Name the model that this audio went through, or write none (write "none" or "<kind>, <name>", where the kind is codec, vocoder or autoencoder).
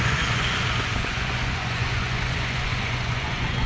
vocoder, Vocos